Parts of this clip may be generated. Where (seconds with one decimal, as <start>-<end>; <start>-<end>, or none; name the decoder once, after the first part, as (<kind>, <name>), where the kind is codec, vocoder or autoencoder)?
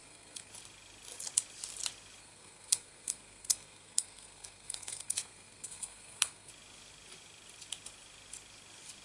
0.0-0.5 (codec, SNAC); 2.2-6.5